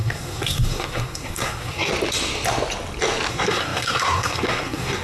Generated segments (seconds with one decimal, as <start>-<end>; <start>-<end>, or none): 0.0-1.9; 3.3-5.0